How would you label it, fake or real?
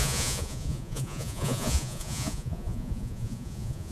fake